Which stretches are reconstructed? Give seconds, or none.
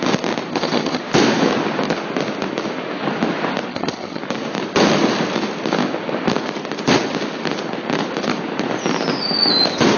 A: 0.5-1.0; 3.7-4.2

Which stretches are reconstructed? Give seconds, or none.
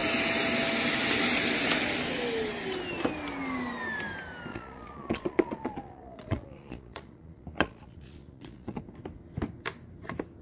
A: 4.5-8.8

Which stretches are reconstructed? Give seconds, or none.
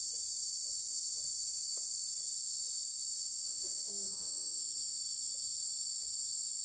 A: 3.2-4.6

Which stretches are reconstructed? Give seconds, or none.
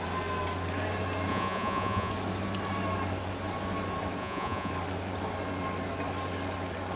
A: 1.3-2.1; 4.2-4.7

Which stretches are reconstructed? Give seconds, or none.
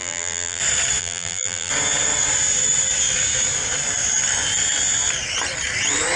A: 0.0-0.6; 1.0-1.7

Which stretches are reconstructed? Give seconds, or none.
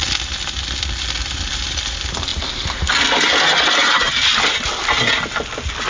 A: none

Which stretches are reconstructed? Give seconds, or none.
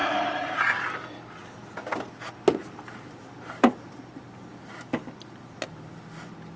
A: 0.0-0.6; 2.6-3.9